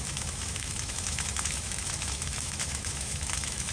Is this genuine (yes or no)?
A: no